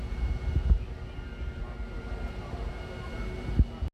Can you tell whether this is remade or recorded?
recorded